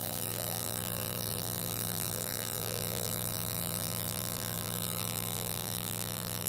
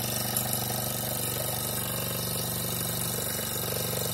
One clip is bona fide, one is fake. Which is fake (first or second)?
first